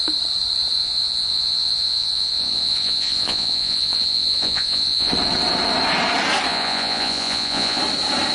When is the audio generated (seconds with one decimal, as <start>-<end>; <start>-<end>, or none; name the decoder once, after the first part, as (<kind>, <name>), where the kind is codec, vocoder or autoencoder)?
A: 0.8-5.1 (vocoder, Vocos); 6.5-7.8